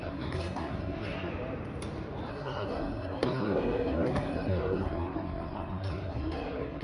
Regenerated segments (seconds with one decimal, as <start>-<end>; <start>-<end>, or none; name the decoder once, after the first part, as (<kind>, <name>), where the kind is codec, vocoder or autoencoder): 0.0-1.3 (codec, SNAC); 2.3-6.8